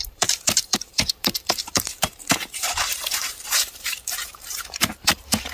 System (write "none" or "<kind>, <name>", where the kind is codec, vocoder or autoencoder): vocoder, BigVGAN v2